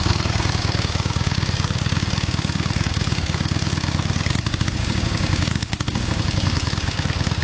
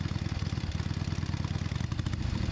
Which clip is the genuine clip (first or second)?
second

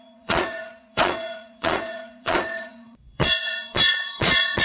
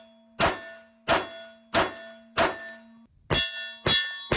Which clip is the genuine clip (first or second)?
second